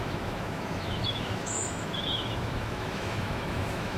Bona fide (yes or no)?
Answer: no